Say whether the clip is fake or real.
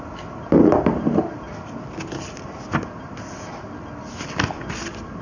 real